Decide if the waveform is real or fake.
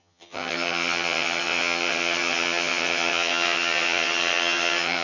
fake